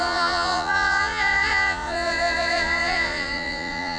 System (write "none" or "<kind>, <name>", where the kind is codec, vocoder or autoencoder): vocoder, Vocos